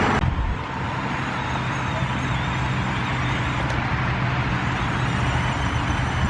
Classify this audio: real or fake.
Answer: real